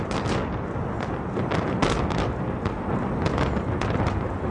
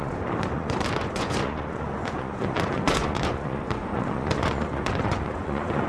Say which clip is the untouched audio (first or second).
first